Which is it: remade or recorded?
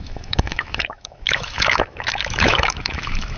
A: remade